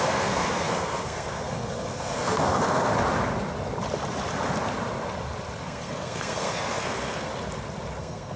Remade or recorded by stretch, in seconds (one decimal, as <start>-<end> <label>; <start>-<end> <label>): 0.0-2.9 remade; 2.9-5.6 recorded; 5.6-7.3 remade; 7.3-8.0 recorded; 8.0-8.4 remade